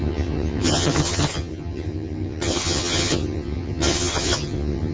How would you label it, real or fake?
fake